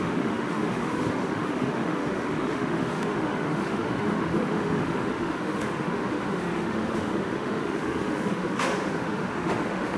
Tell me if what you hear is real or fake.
fake